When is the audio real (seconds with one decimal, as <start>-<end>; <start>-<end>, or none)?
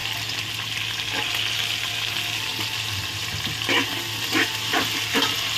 0.0-5.6